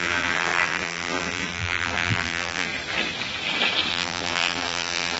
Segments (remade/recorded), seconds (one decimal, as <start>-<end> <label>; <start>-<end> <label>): 0.0-2.7 remade; 2.7-3.9 recorded; 3.9-5.2 remade